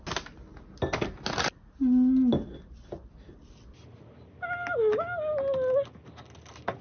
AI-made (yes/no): no